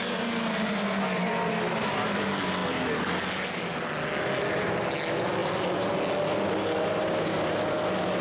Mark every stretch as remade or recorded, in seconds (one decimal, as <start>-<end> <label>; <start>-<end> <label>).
0.0-8.2 recorded